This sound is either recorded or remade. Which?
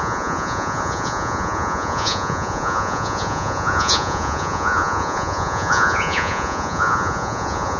remade